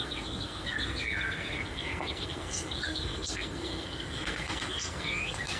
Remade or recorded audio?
remade